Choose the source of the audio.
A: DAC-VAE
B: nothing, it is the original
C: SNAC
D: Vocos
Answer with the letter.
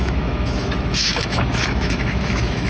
A